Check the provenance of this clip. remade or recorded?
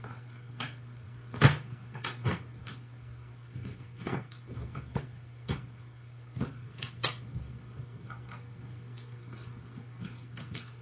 remade